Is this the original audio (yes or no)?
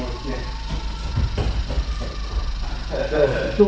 no